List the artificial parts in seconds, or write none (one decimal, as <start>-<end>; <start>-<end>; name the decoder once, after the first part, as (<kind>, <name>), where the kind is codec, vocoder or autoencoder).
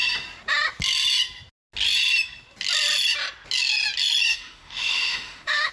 4.3-5.7 (autoencoder, DAC-VAE)